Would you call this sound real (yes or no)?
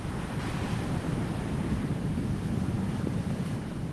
yes